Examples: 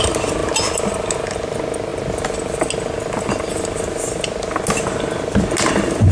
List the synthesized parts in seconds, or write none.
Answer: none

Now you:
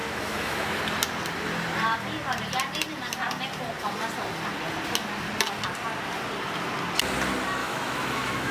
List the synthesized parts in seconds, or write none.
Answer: 0.0-0.8 (autoencoder, DAC-VAE); 7.6-8.5

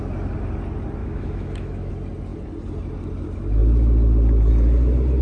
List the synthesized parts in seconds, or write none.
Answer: 1.0-1.9 (autoencoder, DAC-VAE)

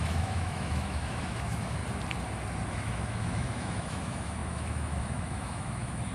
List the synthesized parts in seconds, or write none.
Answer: 0.0-1.8 (autoencoder, DAC-VAE); 2.7-6.1

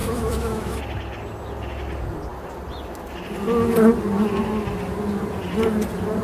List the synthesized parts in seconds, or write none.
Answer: 0.0-0.8 (autoencoder, DAC-VAE)

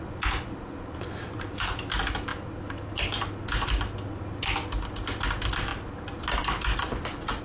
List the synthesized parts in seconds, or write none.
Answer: none

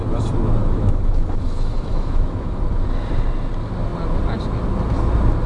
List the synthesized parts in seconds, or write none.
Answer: 0.6-2.6 (autoencoder, DAC-VAE)